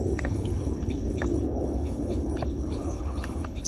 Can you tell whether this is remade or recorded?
remade